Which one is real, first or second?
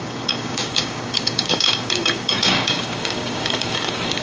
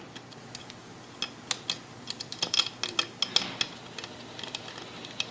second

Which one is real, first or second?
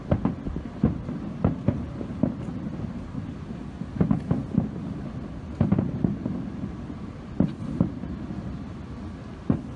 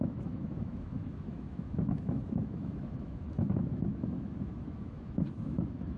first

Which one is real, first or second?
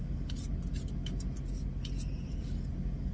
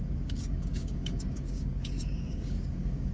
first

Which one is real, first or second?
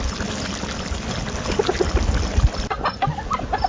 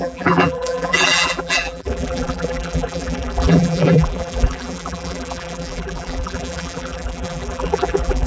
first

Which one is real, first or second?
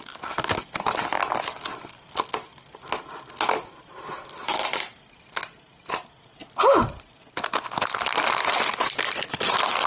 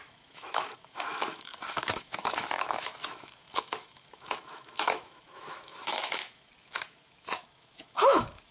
first